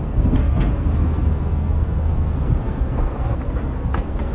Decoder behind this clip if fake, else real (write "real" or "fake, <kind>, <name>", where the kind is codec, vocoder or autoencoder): fake, codec, SNAC